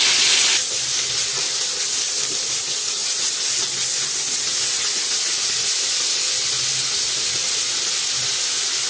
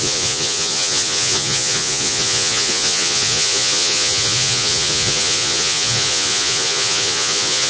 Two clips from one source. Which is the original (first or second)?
first